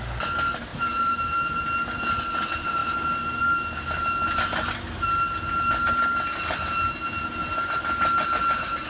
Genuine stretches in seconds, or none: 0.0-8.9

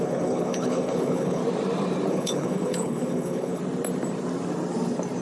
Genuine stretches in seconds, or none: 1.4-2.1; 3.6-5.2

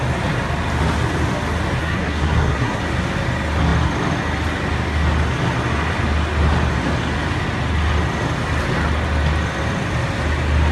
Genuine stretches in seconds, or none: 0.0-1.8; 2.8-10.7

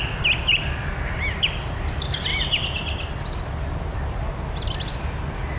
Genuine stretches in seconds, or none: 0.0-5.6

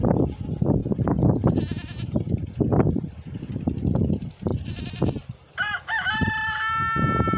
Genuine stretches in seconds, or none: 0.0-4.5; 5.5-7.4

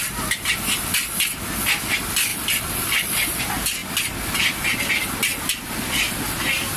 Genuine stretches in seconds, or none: 0.0-2.3; 3.4-6.8

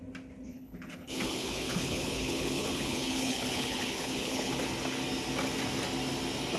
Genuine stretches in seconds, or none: 0.0-0.5; 4.5-6.6

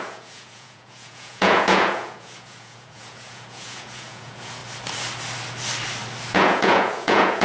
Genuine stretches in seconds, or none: 4.6-6.3